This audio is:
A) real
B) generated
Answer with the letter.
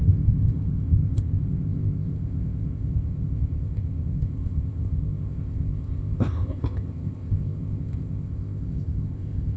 B